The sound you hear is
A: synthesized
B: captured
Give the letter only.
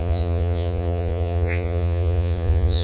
A